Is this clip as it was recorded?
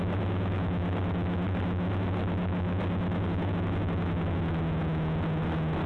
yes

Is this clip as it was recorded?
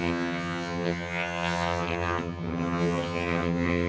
no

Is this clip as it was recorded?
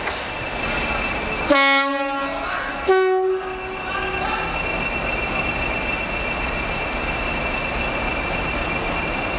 yes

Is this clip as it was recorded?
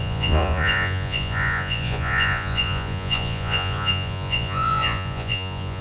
no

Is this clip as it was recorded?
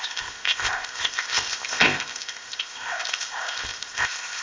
no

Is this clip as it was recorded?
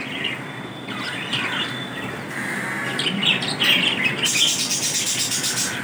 yes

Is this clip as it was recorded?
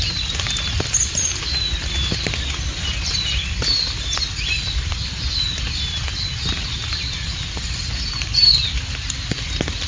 yes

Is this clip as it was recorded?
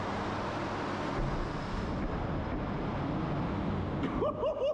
yes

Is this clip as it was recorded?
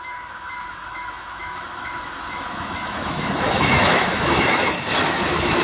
no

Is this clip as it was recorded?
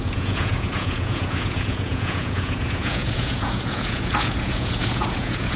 no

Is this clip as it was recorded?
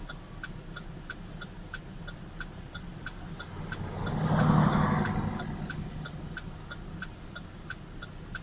yes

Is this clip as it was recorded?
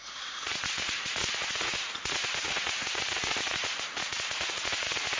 no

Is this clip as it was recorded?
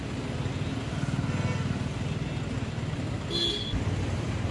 yes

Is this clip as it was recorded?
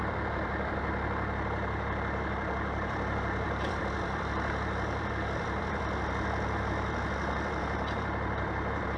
no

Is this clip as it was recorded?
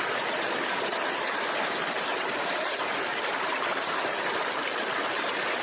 yes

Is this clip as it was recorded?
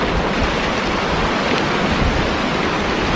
yes